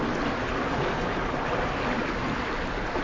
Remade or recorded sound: recorded